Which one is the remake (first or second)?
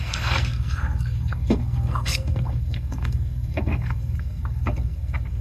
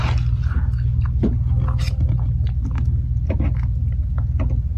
first